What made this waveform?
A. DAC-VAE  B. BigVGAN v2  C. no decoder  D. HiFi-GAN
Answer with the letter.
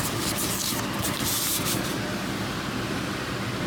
C